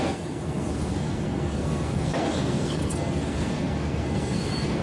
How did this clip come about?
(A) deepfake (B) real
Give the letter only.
A